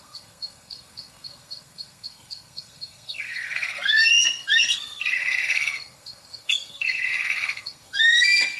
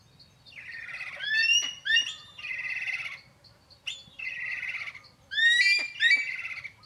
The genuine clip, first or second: second